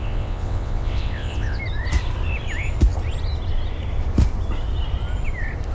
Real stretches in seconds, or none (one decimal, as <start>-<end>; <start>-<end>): 1.6-5.7